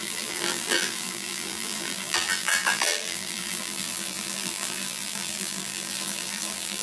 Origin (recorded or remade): remade